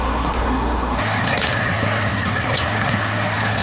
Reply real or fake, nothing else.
fake